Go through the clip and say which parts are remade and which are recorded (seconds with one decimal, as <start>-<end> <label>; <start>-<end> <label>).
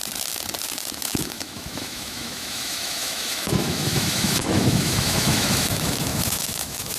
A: 0.0-0.9 recorded; 0.9-7.0 remade